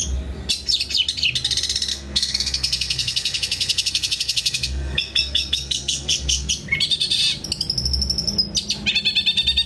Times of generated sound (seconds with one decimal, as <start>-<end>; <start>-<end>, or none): 1.9-6.5